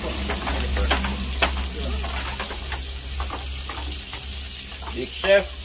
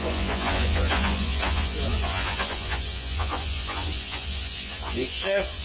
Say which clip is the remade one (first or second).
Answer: second